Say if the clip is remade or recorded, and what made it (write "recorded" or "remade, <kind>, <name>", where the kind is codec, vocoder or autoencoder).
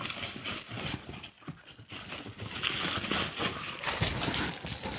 recorded